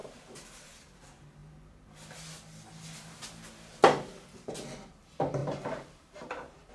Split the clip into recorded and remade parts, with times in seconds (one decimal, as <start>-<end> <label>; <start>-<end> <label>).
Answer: 0.0-0.7 remade; 0.7-5.4 recorded; 5.4-6.7 remade